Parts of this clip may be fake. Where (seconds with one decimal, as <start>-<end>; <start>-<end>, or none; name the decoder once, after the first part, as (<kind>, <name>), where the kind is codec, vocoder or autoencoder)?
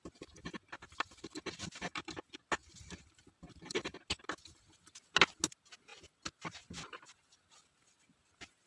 none